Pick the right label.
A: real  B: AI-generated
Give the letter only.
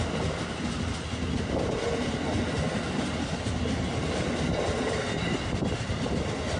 A